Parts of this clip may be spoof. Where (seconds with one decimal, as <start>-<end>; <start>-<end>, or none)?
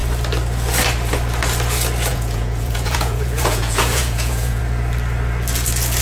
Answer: 2.1-4.6